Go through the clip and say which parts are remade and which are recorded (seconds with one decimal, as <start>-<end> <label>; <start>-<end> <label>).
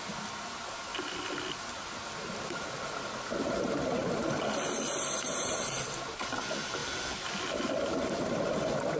0.0-9.0 recorded